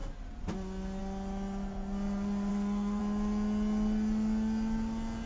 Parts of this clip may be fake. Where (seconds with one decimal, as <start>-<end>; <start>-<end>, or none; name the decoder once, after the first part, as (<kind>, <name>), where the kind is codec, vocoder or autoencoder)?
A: 2.5-3.0 (codec, SNAC)